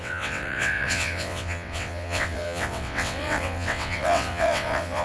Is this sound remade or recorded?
remade